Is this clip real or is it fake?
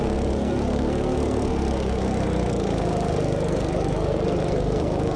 fake